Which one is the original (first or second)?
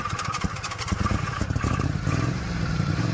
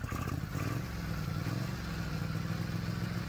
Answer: second